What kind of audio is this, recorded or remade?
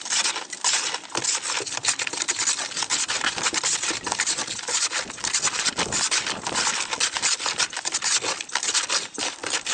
recorded